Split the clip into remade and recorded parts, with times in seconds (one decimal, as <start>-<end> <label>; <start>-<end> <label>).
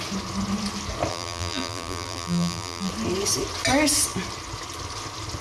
0.0-1.1 recorded; 1.1-2.9 remade; 2.9-5.4 recorded